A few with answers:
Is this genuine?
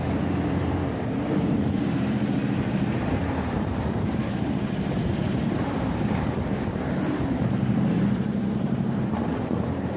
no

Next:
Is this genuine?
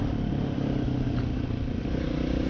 yes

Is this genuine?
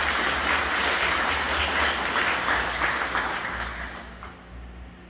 yes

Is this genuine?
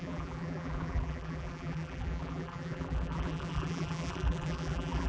no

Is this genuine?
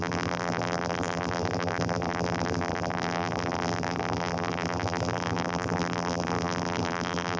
no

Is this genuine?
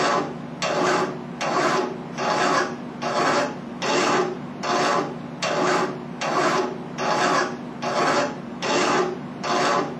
yes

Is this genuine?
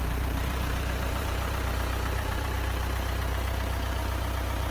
no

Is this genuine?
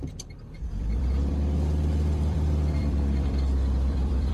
no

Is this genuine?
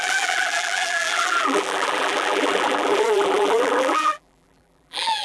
no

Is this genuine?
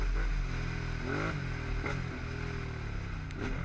yes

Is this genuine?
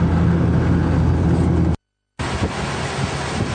yes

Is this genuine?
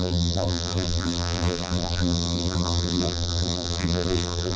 no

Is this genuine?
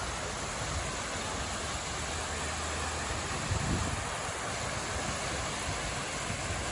yes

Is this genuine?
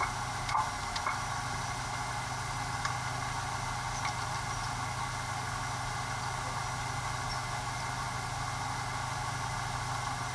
yes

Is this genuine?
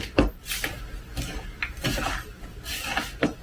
yes